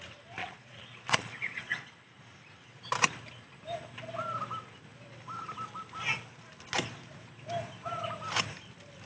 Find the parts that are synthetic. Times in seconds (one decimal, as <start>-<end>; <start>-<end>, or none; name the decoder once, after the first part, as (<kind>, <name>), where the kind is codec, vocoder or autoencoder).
0.4-1.9 (vocoder, Vocos)